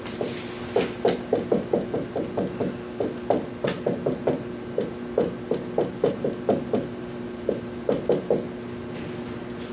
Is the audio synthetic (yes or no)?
no